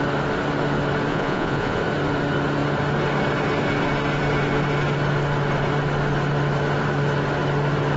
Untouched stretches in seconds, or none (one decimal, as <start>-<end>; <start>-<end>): 0.0-1.1; 1.8-8.0